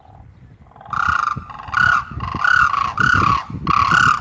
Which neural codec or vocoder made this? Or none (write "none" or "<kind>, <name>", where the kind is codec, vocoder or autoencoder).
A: none